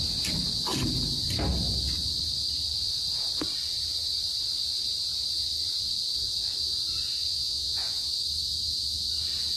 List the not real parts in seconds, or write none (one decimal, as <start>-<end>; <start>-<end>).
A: 7.3-8.1